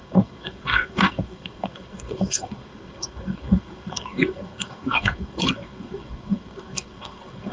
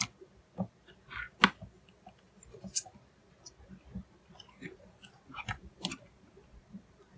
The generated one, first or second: first